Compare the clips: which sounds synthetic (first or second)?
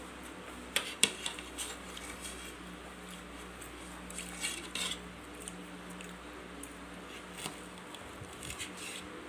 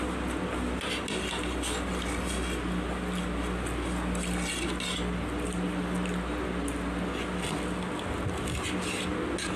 first